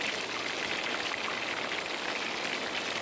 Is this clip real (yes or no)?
yes